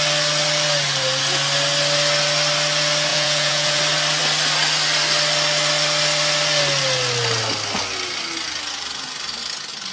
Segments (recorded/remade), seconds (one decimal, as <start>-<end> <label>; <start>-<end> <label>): 0.0-3.1 recorded; 3.1-3.8 remade; 3.8-9.9 recorded